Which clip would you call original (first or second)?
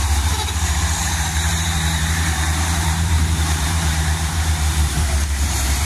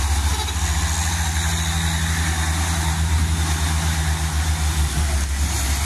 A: second